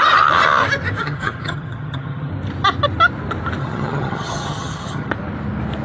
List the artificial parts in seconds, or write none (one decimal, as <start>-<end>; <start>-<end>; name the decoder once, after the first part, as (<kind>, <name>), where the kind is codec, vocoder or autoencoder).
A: 1.0-2.3 (vocoder, HiFi-GAN); 3.6-5.1